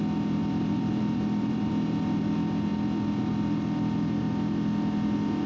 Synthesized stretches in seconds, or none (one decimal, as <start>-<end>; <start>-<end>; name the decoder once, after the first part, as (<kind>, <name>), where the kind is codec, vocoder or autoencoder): 0.4-1.7 (vocoder, BigVGAN v2)